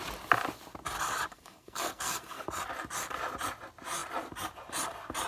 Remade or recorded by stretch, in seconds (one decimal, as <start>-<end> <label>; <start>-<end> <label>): 0.0-1.3 recorded; 1.3-2.4 remade; 2.4-5.3 recorded